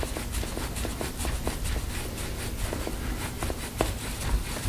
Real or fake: real